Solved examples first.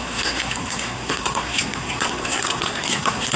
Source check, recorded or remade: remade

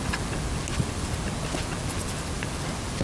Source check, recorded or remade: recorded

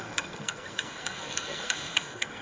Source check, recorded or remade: remade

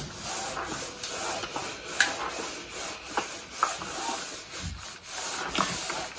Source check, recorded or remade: recorded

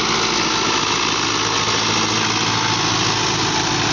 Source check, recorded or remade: recorded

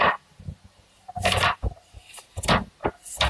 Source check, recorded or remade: recorded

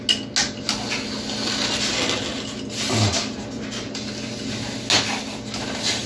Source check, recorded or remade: recorded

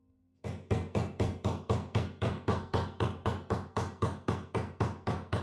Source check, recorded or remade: remade